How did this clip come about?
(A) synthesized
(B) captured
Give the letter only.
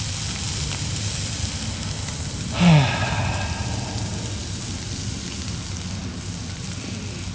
B